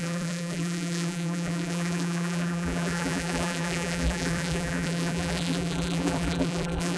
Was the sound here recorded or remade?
remade